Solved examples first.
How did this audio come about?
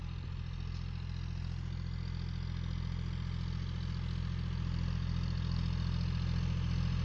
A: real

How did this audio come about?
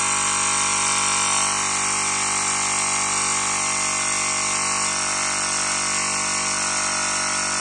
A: real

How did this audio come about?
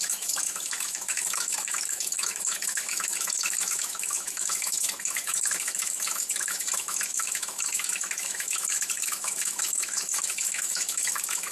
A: fake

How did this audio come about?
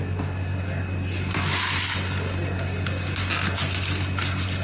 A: real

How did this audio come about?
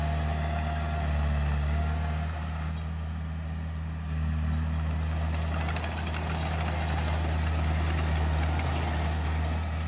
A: real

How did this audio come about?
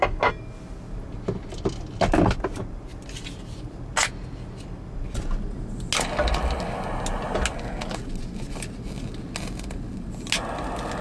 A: real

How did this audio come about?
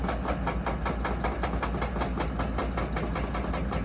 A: real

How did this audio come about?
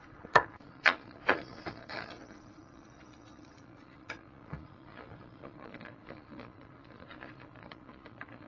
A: fake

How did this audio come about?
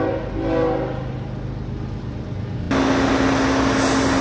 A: real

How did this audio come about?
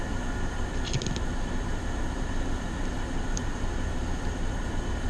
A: fake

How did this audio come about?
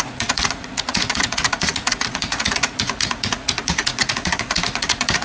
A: fake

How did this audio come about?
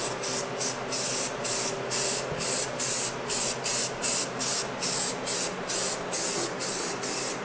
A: real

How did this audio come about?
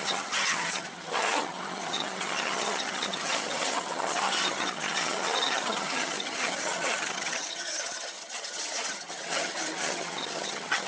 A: fake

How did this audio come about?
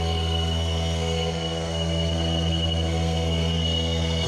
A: fake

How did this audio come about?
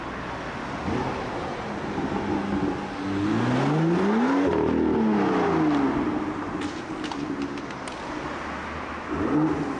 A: real